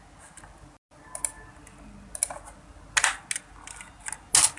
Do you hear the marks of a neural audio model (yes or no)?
no